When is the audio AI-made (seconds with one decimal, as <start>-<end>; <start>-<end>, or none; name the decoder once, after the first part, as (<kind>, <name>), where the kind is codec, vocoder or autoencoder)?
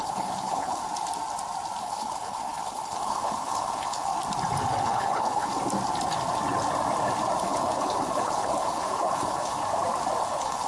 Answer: 0.0-0.8 (codec, HILCodec); 1.8-4.1; 4.8-5.5; 7.4-9.6; 10.2-10.7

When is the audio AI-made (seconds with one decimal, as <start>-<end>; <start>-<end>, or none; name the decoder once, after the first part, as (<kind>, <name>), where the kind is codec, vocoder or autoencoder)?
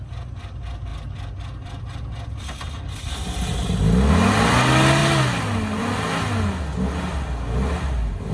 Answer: none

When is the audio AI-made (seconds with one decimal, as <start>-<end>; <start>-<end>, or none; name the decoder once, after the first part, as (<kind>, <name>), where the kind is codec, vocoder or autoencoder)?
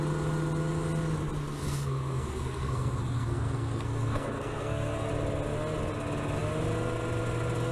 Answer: 1.6-5.1 (codec, SNAC)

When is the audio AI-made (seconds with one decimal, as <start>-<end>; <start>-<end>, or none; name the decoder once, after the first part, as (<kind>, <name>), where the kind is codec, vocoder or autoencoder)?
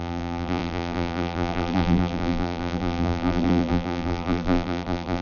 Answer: 0.0-5.2 (vocoder, BigVGAN v2)